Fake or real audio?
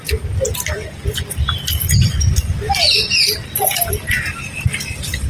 real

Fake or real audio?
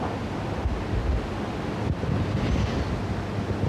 real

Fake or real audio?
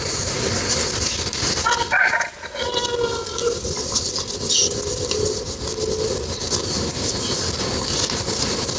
real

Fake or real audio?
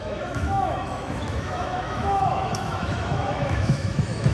fake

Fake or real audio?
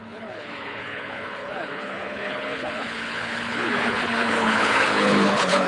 fake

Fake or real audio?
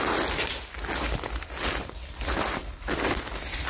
real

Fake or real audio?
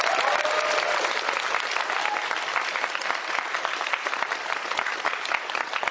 real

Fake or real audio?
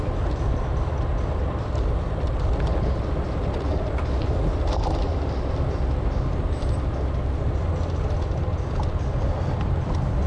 real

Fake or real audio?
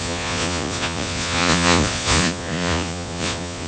fake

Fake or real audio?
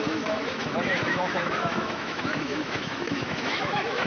fake